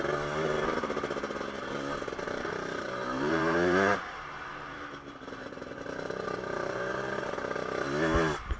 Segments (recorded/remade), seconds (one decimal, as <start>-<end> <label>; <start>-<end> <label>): 0.0-2.2 recorded; 2.2-7.3 remade; 7.3-8.6 recorded